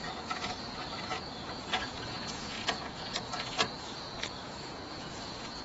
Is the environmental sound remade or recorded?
remade